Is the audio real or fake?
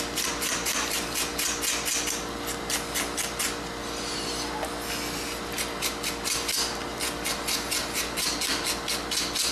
real